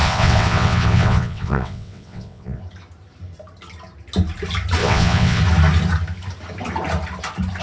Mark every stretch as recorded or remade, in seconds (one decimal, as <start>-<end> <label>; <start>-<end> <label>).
0.0-2.6 remade; 2.6-4.8 recorded; 4.8-5.4 remade; 5.4-7.6 recorded